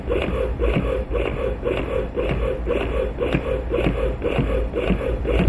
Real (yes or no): yes